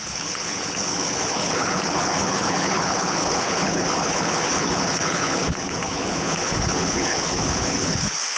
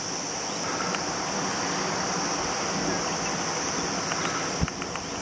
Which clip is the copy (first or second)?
first